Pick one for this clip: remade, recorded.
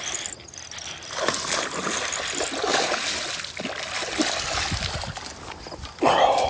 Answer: recorded